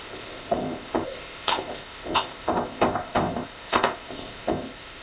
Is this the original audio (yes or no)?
no